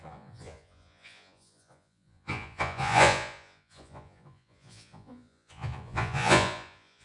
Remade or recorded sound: remade